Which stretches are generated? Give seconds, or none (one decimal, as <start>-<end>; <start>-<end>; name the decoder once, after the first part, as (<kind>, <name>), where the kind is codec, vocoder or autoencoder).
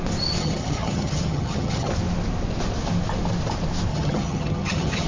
0.4-1.9 (vocoder, HiFi-GAN); 3.9-5.1